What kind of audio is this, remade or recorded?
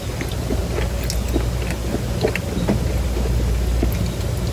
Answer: recorded